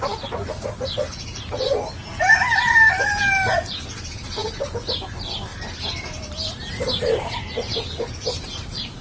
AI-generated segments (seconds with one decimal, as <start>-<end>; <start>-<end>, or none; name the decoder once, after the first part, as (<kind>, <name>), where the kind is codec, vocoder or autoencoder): none